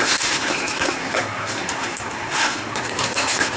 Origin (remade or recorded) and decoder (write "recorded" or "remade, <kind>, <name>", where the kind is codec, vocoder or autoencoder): remade, codec, SNAC